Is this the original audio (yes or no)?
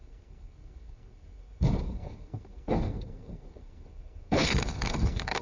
no